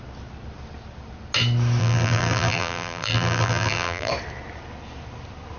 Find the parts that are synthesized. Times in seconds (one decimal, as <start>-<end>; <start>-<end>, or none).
1.8-4.1